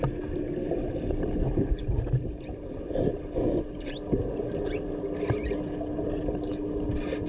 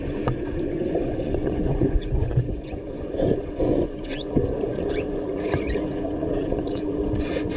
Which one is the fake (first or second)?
second